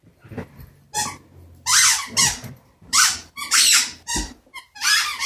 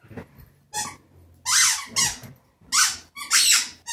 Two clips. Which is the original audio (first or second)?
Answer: second